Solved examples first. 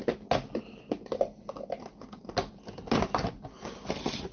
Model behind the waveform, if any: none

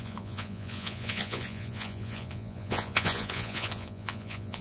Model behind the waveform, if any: vocoder, Vocos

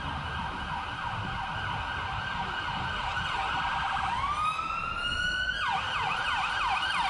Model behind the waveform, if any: none